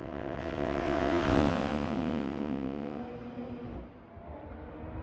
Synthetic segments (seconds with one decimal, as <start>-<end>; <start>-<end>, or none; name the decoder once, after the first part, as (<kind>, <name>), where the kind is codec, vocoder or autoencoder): 0.0-3.0 (vocoder, WaveNeXt)